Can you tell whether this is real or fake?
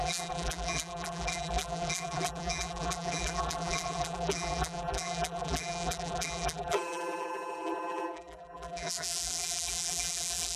fake